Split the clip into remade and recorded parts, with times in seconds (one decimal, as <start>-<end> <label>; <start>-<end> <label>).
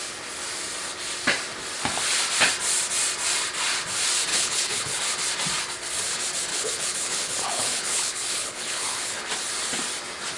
0.0-4.3 recorded; 4.3-5.0 remade; 5.0-6.5 recorded; 6.5-9.2 remade; 9.2-10.4 recorded